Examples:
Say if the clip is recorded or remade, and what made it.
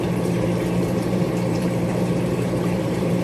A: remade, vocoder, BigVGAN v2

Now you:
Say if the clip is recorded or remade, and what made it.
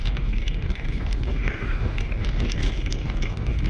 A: remade, codec, DAC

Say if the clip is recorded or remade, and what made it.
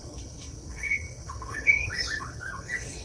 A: remade, codec, HILCodec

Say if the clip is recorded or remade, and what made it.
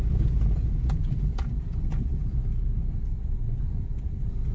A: remade, vocoder, Vocos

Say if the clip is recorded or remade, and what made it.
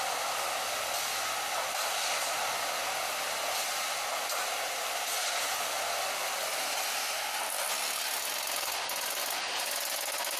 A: recorded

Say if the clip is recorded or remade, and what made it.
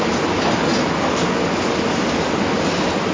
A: recorded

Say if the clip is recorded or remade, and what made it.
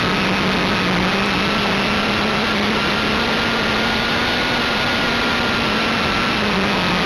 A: recorded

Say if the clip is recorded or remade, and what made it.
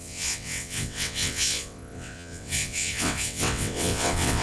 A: remade, vocoder, WaveNeXt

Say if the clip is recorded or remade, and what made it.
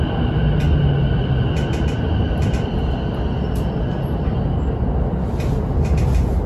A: recorded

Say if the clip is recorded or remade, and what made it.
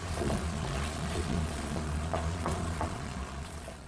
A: remade, vocoder, Vocos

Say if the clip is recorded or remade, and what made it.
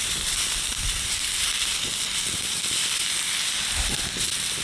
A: remade, vocoder, BigVGAN v2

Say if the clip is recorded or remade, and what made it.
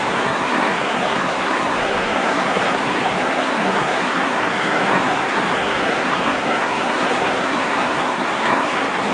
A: remade, codec, SNAC